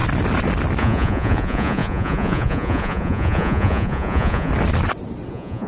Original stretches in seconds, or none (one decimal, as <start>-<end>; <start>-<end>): 0.0-0.8; 4.5-5.3